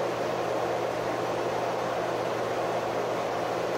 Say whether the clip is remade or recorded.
recorded